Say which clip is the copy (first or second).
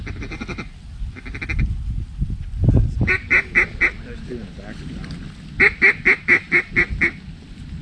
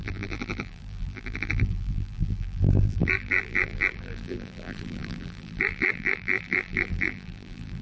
second